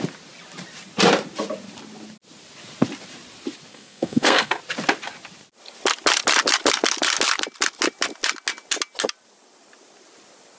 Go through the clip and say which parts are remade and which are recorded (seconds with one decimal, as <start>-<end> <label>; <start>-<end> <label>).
0.0-3.7 recorded; 3.7-4.6 remade; 4.6-10.6 recorded